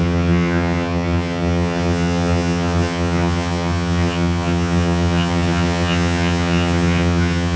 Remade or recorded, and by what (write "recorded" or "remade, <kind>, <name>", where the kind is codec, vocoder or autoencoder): remade, vocoder, HiFi-GAN